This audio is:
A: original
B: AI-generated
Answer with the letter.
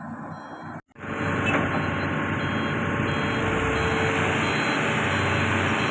A